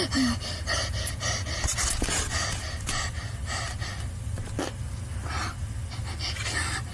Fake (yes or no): no